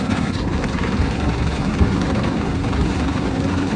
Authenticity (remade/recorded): remade